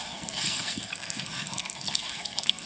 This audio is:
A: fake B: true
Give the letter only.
A